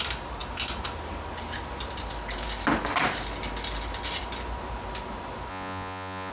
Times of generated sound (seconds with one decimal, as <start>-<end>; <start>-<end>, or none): 5.5-6.3